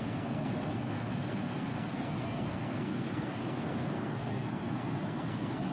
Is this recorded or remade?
remade